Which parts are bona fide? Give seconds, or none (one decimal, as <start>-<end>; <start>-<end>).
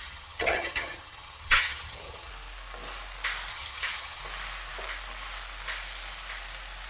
2.3-3.5; 4.2-6.9